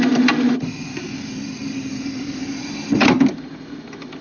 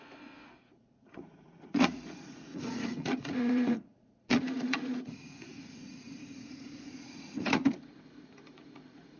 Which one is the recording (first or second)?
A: first